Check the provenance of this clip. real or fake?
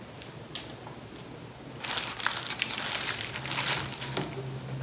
real